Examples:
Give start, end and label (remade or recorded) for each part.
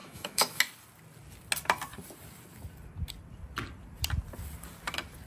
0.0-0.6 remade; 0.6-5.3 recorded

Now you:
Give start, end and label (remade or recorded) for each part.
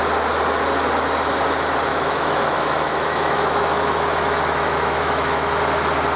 0.0-1.9 recorded; 1.9-5.6 remade; 5.6-6.2 recorded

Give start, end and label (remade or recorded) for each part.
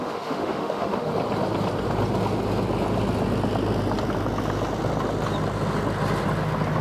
0.0-1.1 remade; 1.1-6.8 recorded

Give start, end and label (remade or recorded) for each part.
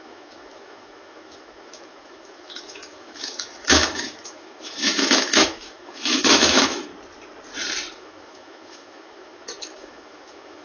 0.0-6.9 remade; 6.9-7.9 recorded; 7.9-10.6 remade